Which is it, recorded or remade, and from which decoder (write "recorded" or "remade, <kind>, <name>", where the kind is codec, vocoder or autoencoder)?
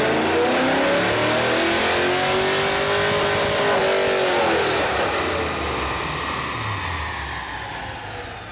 recorded